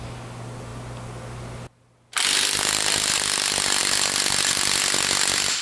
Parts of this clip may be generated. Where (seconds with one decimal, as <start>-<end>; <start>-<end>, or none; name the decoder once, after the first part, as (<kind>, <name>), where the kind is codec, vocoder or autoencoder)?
none